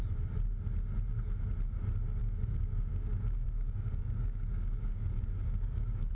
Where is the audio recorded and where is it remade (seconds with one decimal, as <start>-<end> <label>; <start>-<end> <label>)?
0.0-2.2 recorded; 2.2-6.1 remade